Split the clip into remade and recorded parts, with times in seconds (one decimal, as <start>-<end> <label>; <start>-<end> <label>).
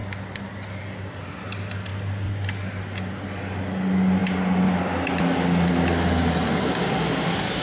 0.0-7.6 recorded